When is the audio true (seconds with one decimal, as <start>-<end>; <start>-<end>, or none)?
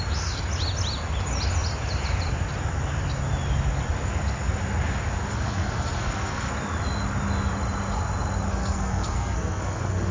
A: 0.0-5.3; 6.5-8.5